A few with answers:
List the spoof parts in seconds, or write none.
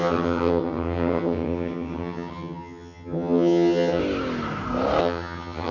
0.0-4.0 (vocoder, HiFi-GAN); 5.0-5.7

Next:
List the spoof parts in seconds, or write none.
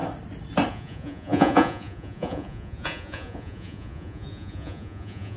0.7-5.4 (vocoder, Vocos)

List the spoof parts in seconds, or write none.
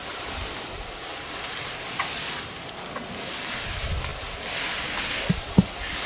none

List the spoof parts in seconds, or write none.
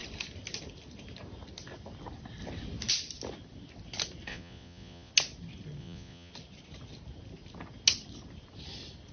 4.3-5.1 (vocoder, Vocos); 5.8-6.3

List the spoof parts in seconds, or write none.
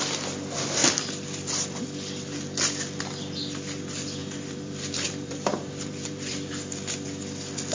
4.2-6.5 (vocoder, BigVGAN v2)